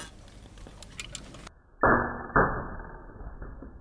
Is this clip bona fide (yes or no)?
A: yes